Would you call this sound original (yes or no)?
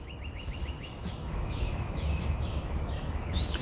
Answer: no